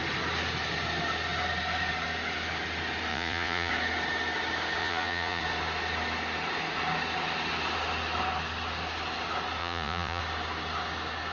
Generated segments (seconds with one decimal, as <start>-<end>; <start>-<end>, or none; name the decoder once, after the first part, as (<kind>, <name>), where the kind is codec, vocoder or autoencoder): 3.1-3.7 (vocoder, Vocos); 4.8-5.4; 9.6-10.2